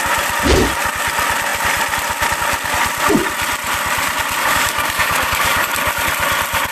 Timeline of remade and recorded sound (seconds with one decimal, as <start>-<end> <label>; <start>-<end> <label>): 0.0-4.4 recorded; 4.4-5.7 remade; 5.7-6.7 recorded